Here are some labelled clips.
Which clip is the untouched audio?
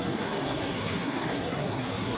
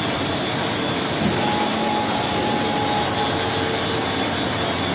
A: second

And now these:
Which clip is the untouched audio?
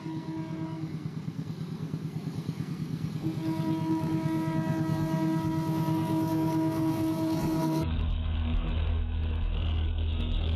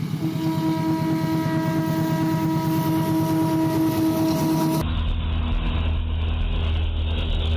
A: second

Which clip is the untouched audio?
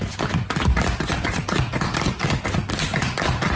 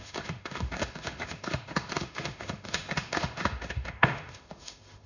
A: first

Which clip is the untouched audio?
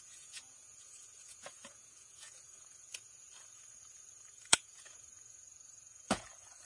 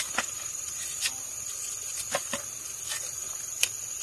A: second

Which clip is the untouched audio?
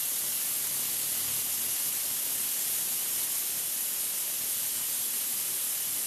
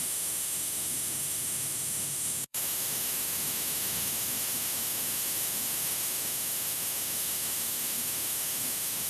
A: first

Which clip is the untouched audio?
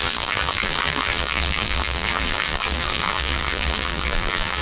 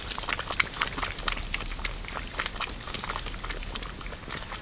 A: second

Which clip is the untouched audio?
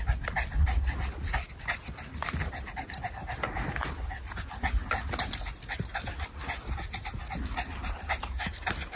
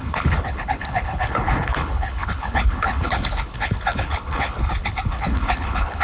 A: first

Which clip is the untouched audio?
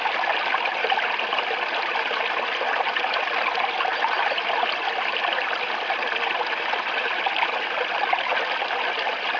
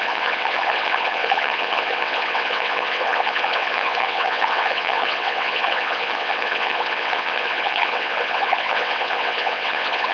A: first